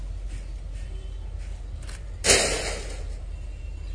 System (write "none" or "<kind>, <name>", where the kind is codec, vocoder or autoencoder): none